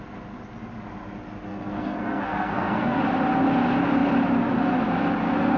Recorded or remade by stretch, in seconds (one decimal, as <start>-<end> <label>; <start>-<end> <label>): 0.0-1.5 recorded; 1.5-3.0 remade; 3.0-5.6 recorded